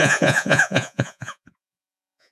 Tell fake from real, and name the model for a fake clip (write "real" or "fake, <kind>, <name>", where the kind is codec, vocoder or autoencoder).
fake, vocoder, Vocos